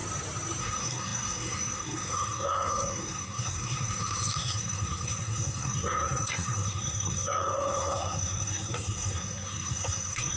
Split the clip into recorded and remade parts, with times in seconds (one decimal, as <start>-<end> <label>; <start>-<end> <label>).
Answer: 0.0-0.6 recorded; 0.6-10.4 remade